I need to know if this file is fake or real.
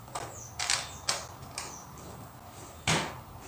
real